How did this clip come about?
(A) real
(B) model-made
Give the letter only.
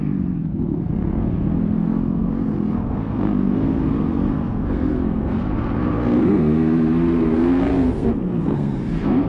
B